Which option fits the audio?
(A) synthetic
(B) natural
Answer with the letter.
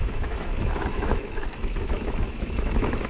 A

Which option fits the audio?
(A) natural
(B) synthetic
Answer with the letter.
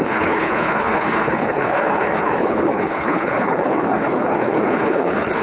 B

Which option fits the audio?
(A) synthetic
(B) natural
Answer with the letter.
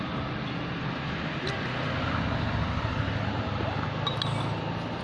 B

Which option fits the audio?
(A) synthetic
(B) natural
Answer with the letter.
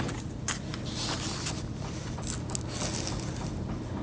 B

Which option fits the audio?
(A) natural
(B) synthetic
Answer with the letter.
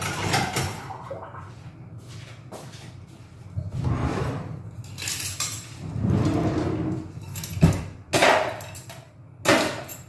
A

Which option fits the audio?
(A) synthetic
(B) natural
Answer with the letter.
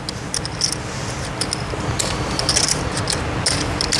B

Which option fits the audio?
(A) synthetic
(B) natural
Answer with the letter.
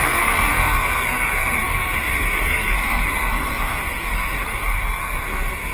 A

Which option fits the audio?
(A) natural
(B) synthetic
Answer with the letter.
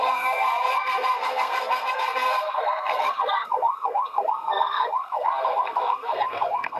B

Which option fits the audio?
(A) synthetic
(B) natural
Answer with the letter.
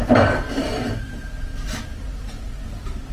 B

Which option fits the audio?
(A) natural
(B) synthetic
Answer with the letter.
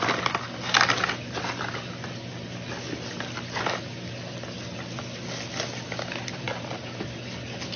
A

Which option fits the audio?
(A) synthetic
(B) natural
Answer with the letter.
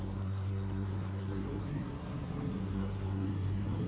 A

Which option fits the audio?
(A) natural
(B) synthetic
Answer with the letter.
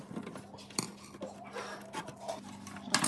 A